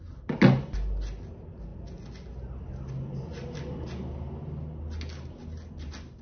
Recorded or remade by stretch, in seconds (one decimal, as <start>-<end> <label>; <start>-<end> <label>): 0.0-6.2 recorded